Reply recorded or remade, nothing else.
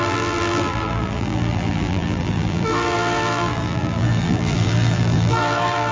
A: remade